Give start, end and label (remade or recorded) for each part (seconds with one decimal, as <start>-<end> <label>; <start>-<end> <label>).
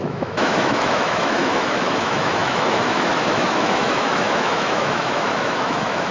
0.0-6.1 remade